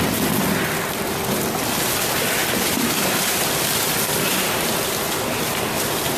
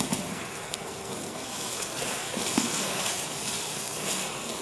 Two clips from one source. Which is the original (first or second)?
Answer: first